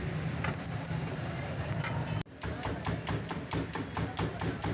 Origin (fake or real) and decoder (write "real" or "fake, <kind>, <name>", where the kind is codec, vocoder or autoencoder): real